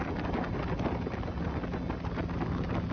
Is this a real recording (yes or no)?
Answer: yes